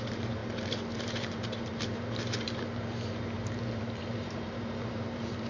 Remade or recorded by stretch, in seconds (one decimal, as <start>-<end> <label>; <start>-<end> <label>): 0.0-5.5 remade